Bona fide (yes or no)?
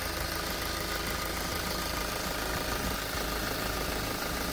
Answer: yes